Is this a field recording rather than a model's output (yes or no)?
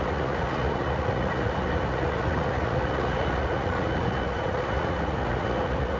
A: no